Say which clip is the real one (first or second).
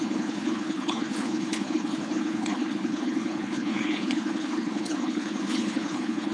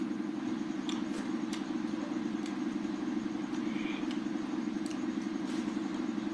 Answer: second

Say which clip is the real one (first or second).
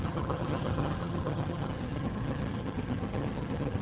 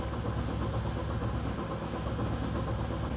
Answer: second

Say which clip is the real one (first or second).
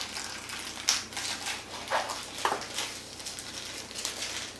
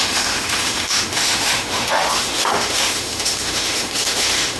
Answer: first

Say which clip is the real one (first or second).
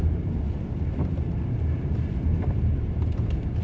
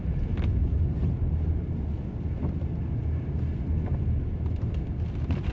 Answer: second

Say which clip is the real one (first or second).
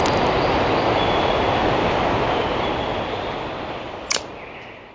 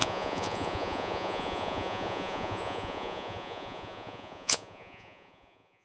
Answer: first